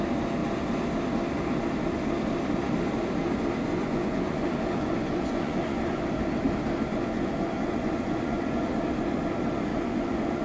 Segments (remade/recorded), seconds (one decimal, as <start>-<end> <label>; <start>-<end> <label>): 0.0-3.7 recorded; 3.7-6.0 remade; 6.0-6.9 recorded; 6.9-8.7 remade; 8.7-9.7 recorded; 9.7-10.4 remade